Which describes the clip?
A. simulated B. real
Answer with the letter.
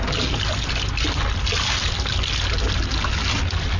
B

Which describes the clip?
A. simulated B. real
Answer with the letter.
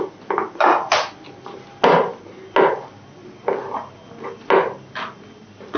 B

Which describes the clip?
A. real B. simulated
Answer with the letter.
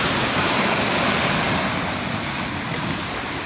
A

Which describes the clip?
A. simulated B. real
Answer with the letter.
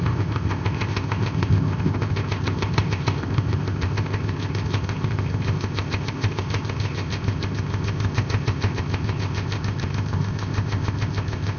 A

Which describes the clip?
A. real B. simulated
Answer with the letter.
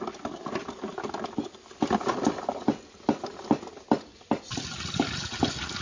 A